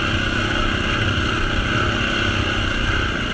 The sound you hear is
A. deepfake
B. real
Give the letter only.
B